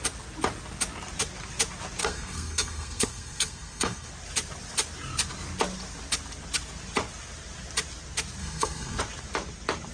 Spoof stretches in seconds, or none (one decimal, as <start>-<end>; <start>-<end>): 2.0-4.1; 8.4-9.0